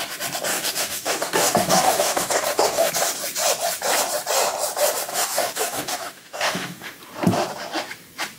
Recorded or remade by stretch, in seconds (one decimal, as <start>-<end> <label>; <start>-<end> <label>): 0.0-0.5 recorded; 0.5-2.9 remade; 2.9-5.1 recorded; 5.1-7.0 remade; 7.0-8.4 recorded